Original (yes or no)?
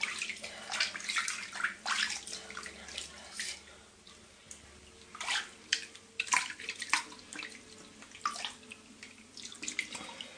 yes